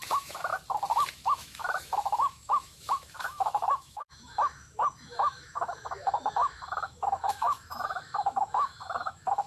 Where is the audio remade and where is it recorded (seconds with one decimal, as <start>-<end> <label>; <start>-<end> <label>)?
0.0-0.5 remade; 0.5-1.1 recorded; 1.1-9.5 remade